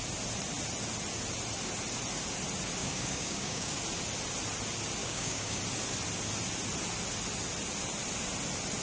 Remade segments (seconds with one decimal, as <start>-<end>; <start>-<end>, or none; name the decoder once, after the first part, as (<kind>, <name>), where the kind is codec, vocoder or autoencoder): 2.8-3.8 (codec, DAC); 5.0-5.6